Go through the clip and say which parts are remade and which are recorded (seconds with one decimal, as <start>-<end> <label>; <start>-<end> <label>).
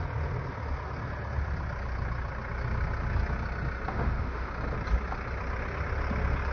0.0-3.9 recorded; 3.9-4.5 remade; 4.5-6.5 recorded